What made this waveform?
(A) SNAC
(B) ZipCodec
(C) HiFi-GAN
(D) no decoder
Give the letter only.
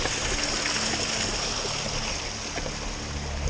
D